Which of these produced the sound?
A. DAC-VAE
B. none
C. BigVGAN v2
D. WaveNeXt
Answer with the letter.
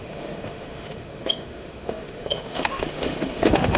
A